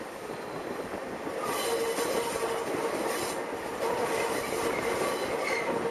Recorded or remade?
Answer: recorded